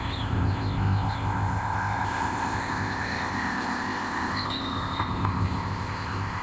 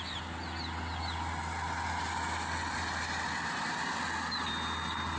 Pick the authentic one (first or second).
second